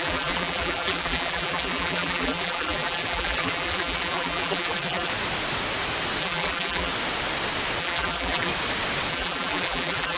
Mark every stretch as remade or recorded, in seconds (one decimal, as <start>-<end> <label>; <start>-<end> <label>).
0.0-5.1 remade; 5.1-6.2 recorded; 6.2-6.9 remade; 6.9-7.8 recorded; 7.8-8.5 remade; 8.5-9.1 recorded; 9.1-10.2 remade

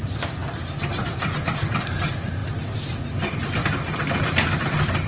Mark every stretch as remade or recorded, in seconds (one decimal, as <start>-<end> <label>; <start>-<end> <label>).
0.0-0.4 remade; 0.4-1.0 recorded; 1.0-2.4 remade; 2.4-3.2 recorded; 3.2-3.6 remade; 3.6-4.6 recorded; 4.6-5.1 remade

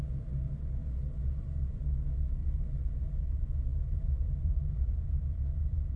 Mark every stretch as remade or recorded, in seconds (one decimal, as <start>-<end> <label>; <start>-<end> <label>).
0.0-0.8 recorded; 0.8-1.8 remade; 1.8-2.4 recorded; 2.4-3.1 remade; 3.1-3.7 recorded; 3.7-6.0 remade

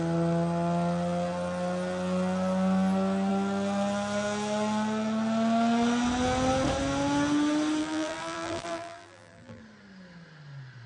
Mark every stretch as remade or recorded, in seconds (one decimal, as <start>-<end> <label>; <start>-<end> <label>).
0.0-7.8 recorded; 7.8-9.6 remade; 9.6-10.9 recorded

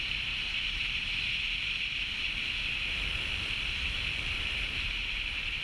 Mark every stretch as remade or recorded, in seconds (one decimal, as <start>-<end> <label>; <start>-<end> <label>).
0.0-1.1 remade; 1.1-4.3 recorded; 4.3-5.6 remade

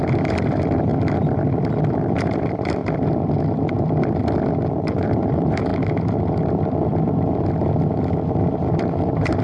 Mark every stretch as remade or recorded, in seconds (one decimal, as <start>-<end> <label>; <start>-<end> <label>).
0.0-0.9 remade; 0.9-1.9 recorded; 1.9-2.8 remade; 2.8-4.7 recorded; 4.7-5.7 remade; 5.7-8.8 recorded; 8.8-9.4 remade

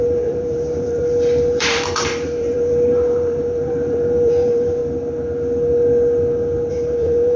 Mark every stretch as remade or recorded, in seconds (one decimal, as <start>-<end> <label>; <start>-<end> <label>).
0.0-4.8 remade; 4.8-6.7 recorded; 6.7-7.4 remade

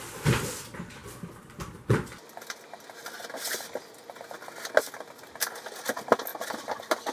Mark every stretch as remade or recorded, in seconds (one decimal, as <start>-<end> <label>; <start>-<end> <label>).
0.0-7.1 recorded